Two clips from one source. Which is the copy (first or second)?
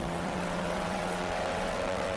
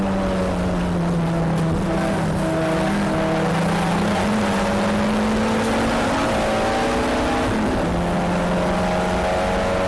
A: first